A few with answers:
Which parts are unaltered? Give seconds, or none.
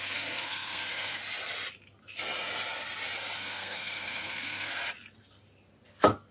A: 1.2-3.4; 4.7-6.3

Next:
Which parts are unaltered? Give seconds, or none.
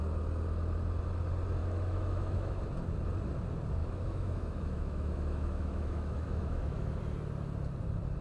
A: 0.0-1.6; 2.6-3.8; 7.0-8.2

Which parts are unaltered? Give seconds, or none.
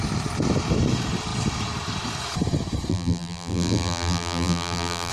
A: 0.0-2.9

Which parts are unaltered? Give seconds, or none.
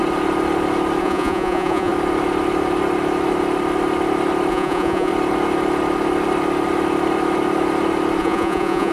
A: 0.0-1.0; 1.9-4.5; 5.1-8.2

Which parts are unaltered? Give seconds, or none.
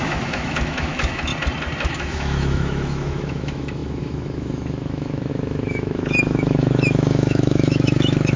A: 1.3-1.8